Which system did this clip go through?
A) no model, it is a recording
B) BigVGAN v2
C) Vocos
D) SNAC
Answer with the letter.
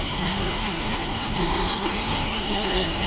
D